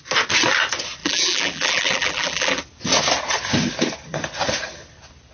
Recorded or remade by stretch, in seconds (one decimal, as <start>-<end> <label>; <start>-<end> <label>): 0.0-1.0 recorded; 1.0-2.6 remade; 2.6-5.3 recorded

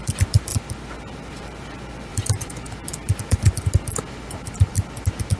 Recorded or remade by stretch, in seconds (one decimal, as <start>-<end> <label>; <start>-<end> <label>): 0.0-2.1 remade; 2.1-5.4 recorded

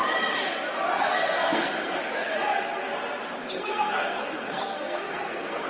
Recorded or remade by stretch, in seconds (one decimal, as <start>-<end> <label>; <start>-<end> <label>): 0.0-1.0 recorded; 1.0-2.9 remade; 2.9-3.5 recorded; 3.5-5.7 remade

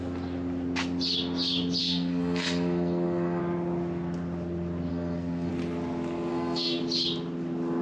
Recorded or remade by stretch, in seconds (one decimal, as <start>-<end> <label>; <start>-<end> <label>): 0.0-1.8 recorded; 1.8-3.4 remade; 3.4-4.9 recorded; 4.9-5.5 remade; 5.5-6.3 recorded; 6.3-6.8 remade; 6.8-7.8 recorded